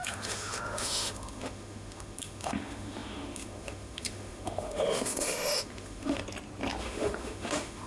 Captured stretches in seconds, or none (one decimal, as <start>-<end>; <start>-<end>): 6.2-6.8